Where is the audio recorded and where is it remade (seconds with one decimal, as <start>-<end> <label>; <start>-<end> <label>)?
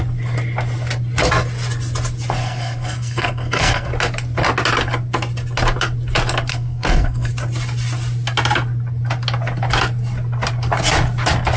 0.0-2.4 recorded; 2.4-3.9 remade; 3.9-6.5 recorded; 6.5-7.3 remade; 7.3-11.6 recorded